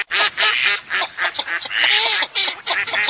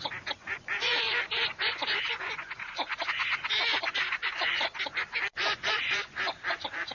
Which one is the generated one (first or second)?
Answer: second